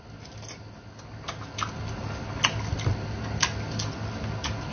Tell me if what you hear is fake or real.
real